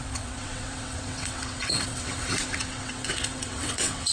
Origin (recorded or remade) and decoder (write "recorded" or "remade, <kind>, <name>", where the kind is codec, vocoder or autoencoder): remade, vocoder, WaveNeXt